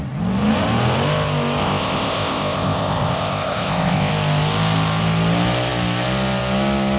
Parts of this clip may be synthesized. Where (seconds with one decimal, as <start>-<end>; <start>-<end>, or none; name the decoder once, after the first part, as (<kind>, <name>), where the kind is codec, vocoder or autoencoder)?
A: 1.6-4.1 (codec, ZipCodec)